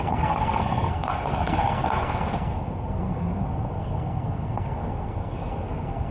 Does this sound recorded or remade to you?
remade